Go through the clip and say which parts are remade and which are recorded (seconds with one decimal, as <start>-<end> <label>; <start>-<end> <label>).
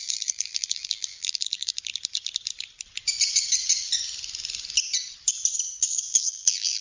0.0-1.7 remade; 1.7-5.8 recorded; 5.8-6.8 remade